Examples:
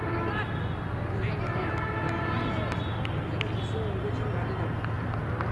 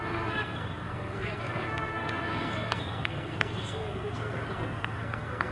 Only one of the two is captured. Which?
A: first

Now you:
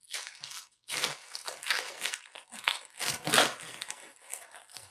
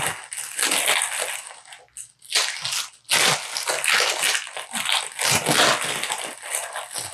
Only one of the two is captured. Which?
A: second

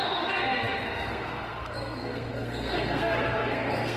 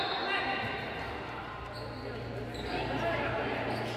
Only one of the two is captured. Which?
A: second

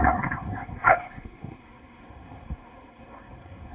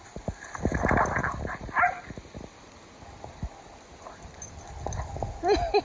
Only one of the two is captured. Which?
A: second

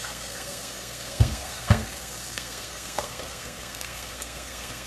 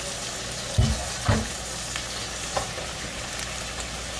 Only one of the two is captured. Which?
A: second